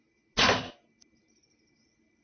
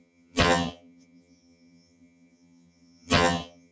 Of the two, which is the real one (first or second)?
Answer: first